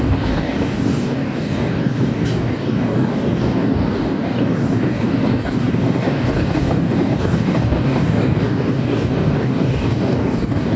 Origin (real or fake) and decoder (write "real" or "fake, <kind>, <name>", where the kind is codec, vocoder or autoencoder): fake, codec, DAC